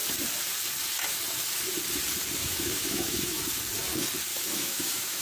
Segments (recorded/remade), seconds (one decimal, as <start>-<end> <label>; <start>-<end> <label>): 0.0-2.4 recorded; 2.4-3.4 remade; 3.4-4.3 recorded; 4.3-5.2 remade